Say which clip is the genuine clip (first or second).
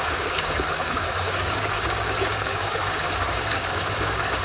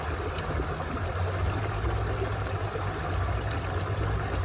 second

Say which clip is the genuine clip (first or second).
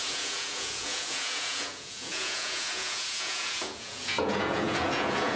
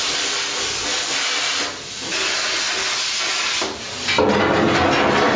second